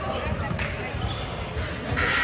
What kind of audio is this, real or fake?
real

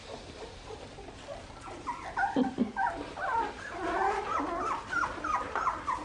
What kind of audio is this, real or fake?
real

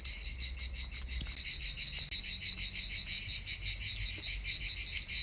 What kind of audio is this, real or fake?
real